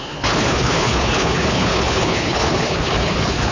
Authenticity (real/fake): fake